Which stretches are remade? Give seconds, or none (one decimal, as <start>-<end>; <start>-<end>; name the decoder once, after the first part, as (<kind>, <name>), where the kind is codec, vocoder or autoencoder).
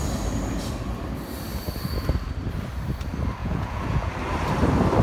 3.4-4.1 (vocoder, Vocos)